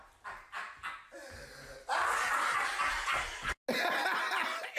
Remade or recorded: recorded